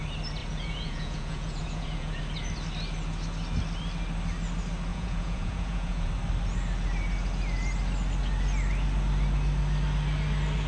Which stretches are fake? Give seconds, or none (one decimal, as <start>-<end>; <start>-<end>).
0.4-2.2; 4.9-6.1